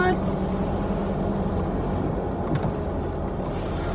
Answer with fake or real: real